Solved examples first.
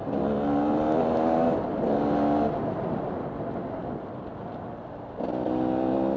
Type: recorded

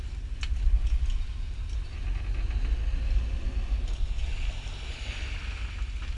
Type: recorded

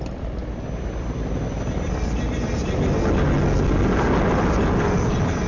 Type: recorded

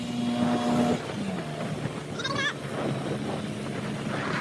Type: recorded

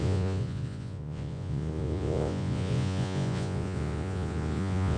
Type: remade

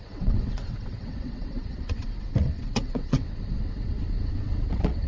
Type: remade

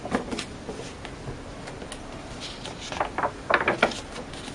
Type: recorded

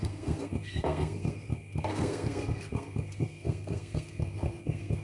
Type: remade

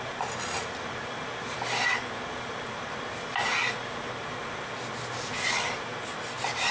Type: recorded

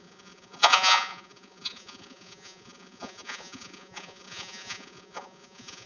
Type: remade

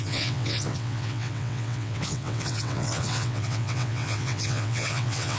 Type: remade